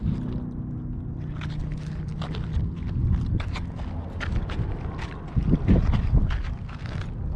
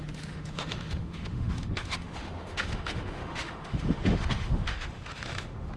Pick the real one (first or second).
first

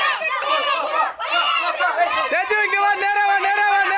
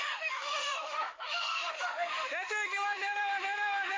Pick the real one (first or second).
first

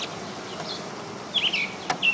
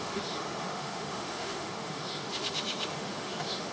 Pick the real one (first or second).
first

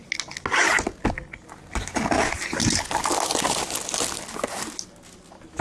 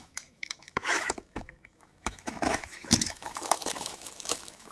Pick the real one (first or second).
first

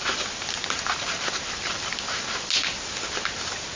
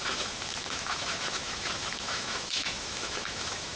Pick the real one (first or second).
first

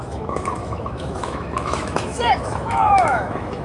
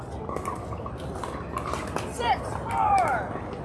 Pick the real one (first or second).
second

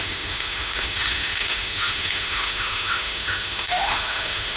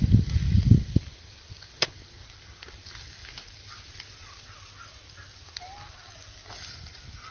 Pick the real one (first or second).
second